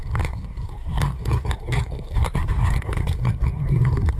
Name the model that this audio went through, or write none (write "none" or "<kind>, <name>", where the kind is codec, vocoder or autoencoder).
codec, SNAC